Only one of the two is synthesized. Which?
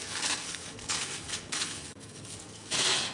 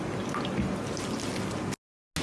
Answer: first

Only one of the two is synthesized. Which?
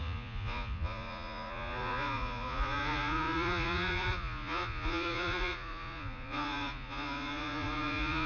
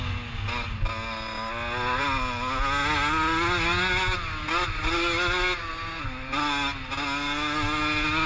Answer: first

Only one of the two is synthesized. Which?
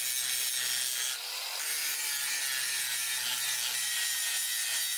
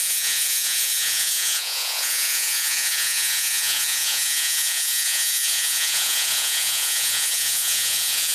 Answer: second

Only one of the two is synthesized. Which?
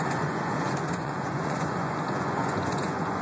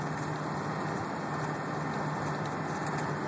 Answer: first